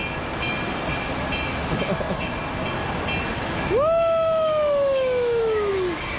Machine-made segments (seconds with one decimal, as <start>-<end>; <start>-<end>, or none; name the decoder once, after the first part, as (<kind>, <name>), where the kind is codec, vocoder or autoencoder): 1.5-2.3 (autoencoder, DAC-VAE); 3.3-5.7